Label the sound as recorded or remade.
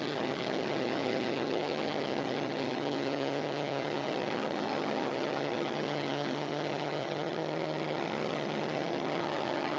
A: remade